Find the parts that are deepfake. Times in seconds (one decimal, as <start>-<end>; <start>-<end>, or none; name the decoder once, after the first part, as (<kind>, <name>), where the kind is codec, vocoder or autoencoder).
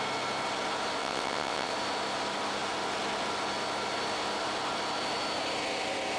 1.0-1.7 (vocoder, WaveNeXt)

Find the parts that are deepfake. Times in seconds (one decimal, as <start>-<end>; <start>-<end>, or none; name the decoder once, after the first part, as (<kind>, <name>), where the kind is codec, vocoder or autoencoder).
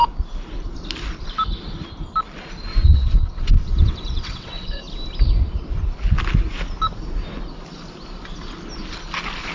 2.7-4.8 (vocoder, WaveNeXt)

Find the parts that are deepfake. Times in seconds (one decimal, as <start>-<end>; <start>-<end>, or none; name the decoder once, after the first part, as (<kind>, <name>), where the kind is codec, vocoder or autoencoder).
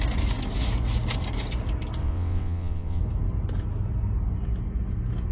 2.0-3.0 (vocoder, WaveNeXt)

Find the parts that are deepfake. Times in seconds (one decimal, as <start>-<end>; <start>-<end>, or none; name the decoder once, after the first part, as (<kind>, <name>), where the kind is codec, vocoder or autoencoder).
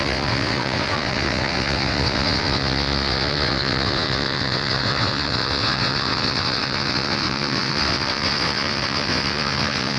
0.0-10.0 (vocoder, WaveNeXt)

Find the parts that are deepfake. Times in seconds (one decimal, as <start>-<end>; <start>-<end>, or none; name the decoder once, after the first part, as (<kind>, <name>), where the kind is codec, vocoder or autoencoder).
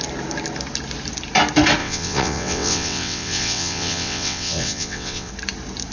1.8-5.3 (vocoder, WaveNeXt)